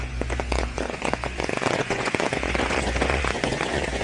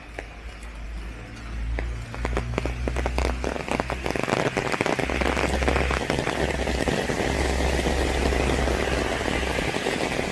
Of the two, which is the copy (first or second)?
first